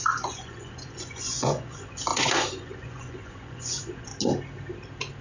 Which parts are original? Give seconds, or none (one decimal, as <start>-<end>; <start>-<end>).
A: 4.1-5.2

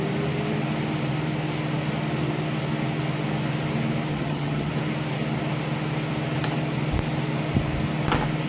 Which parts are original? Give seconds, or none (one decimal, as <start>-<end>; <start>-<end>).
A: 0.0-4.1; 4.7-8.5

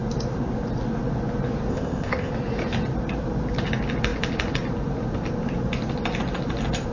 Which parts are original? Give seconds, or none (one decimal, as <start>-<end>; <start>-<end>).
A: 0.0-1.7; 2.3-6.9